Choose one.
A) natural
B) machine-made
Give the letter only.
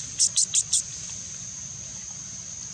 A